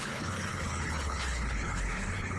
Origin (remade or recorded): remade